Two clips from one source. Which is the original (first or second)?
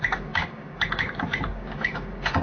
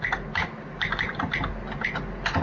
second